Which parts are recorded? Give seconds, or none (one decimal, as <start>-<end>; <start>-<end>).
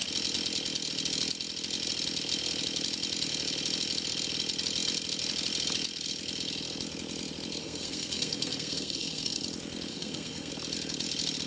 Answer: 0.0-7.6; 9.4-9.9; 10.5-11.5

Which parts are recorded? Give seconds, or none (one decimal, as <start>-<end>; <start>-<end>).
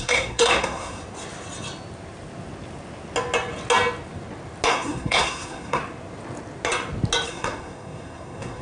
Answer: 1.0-4.7; 5.8-7.3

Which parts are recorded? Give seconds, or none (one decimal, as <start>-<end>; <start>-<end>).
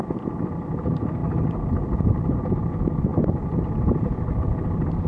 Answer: 0.0-5.1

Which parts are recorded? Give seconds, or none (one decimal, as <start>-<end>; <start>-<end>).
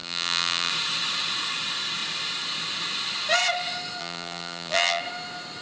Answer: 0.7-4.0; 5.0-5.6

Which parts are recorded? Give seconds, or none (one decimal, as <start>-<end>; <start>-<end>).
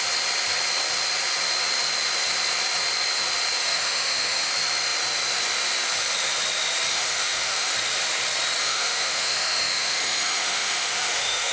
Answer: 0.0-3.6; 4.5-6.9; 7.7-8.6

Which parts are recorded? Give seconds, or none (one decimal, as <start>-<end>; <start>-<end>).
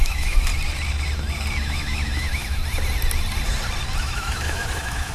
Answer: 0.5-1.6; 2.6-4.0